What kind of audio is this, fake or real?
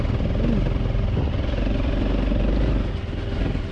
real